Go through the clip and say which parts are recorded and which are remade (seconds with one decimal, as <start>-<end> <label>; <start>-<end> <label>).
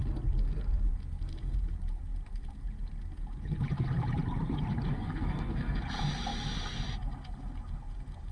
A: 0.0-4.9 recorded; 4.9-5.8 remade; 5.8-8.3 recorded